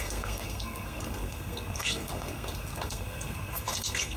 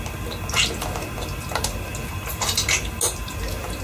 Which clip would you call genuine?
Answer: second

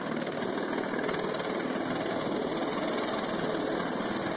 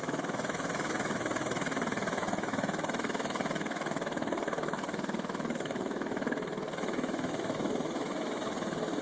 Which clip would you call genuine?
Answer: first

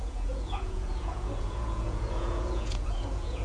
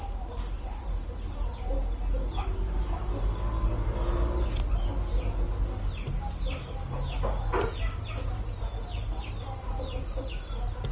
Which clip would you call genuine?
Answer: second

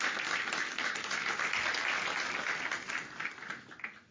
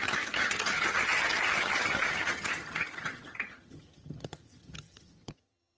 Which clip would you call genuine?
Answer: first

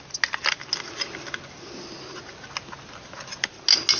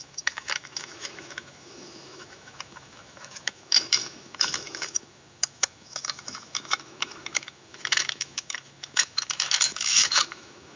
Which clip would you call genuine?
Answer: first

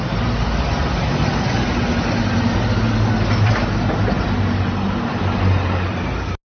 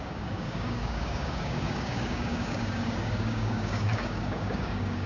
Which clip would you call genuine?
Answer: first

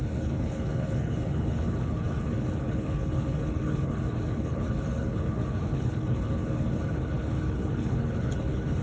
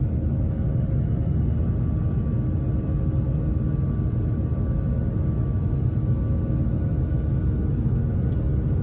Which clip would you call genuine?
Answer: second